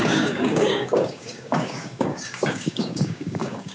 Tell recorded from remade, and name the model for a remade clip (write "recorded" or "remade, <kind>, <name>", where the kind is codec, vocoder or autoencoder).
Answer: remade, codec, DAC